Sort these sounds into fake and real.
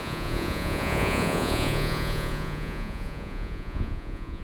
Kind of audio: fake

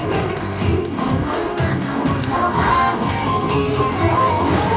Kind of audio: fake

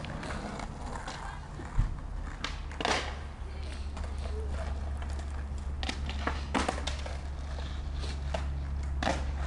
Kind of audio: real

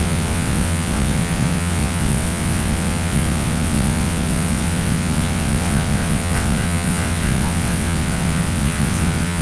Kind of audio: fake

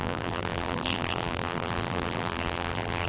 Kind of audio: fake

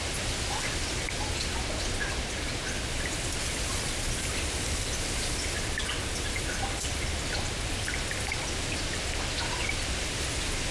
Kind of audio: real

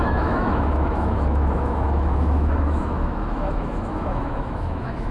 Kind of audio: fake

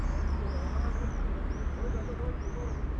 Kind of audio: real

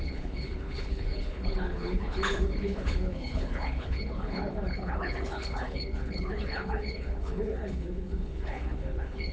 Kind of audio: fake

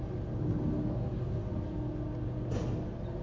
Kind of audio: real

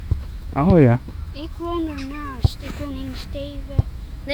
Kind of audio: fake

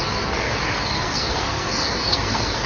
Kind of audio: fake